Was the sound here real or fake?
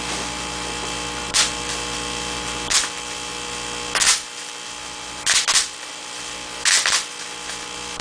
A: real